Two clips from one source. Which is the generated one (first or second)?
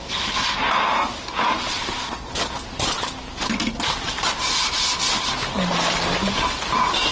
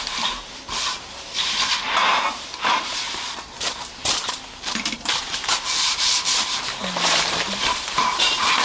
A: second